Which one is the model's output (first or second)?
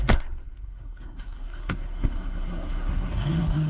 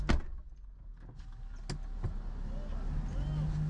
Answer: first